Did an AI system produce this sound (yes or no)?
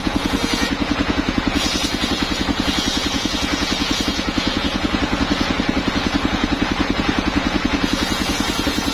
yes